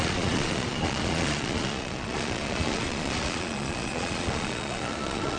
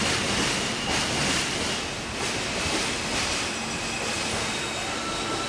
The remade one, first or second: first